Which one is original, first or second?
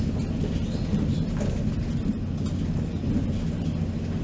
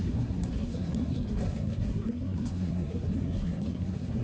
first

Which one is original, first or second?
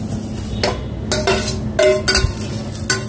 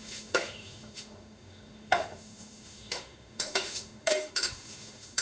first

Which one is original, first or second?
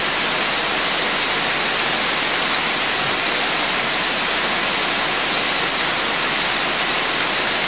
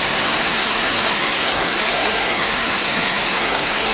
first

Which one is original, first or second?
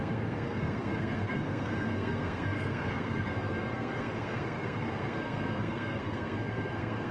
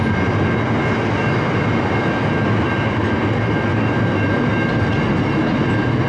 second